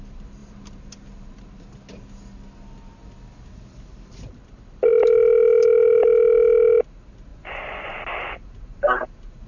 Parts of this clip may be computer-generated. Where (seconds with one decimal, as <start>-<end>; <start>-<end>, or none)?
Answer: 7.3-8.0